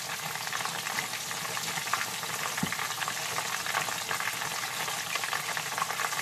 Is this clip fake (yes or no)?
no